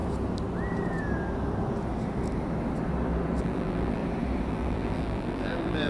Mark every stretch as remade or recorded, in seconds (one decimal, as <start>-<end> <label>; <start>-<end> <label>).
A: 0.0-3.4 recorded; 3.4-4.0 remade; 4.0-4.5 recorded; 4.5-5.9 remade